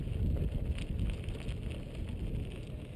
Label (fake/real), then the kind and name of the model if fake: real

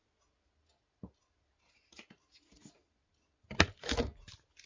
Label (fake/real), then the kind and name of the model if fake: real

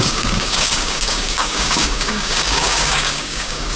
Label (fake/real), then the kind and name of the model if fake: fake, codec, DAC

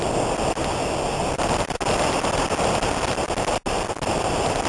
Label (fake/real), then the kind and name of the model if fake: real